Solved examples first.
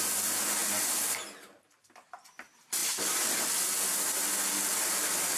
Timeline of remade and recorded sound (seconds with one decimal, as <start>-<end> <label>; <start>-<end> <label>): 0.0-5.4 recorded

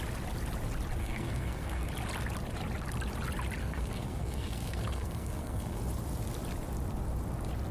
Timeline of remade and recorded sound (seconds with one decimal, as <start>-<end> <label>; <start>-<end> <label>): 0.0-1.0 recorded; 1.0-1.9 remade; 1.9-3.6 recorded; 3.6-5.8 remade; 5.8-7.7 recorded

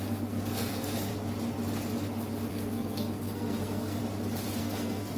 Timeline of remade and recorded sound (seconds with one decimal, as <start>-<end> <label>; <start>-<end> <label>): 0.0-1.1 remade; 1.1-2.5 recorded; 2.5-4.0 remade; 4.0-4.6 recorded; 4.6-5.2 remade

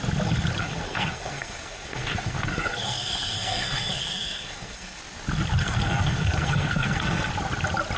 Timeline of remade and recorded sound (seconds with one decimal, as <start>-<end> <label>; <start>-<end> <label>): 0.0-0.6 recorded; 0.6-5.0 remade; 5.0-5.6 recorded; 5.6-7.3 remade; 7.3-8.0 recorded

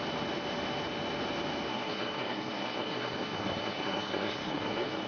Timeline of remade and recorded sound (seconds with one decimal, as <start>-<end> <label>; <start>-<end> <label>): 0.0-1.7 recorded; 1.7-5.1 remade

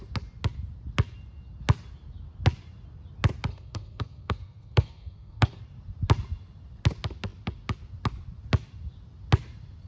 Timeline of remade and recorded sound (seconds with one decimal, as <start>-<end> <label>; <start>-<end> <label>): 0.0-3.5 recorded; 3.5-5.6 remade; 5.6-9.9 recorded